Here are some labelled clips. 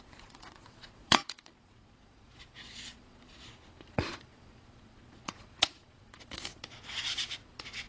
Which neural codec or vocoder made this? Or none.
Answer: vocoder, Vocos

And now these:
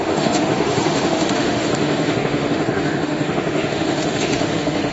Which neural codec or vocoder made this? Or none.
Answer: autoencoder, DAC-VAE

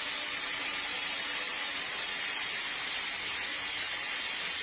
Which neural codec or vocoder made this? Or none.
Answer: none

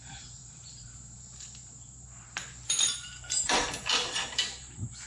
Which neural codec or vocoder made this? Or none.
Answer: vocoder, BigVGAN v2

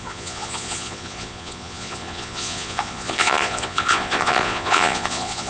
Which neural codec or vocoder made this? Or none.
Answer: vocoder, Vocos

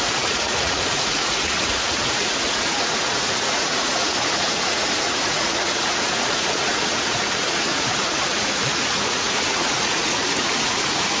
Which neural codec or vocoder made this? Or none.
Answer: vocoder, Vocos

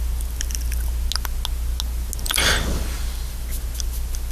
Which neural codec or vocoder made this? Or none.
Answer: none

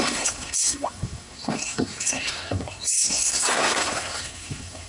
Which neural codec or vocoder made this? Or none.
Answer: codec, SNAC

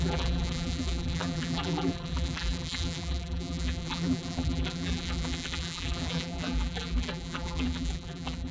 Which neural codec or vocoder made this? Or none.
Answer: vocoder, BigVGAN v2